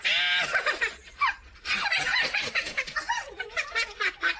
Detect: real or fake real